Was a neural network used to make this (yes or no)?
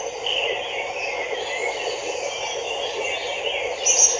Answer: no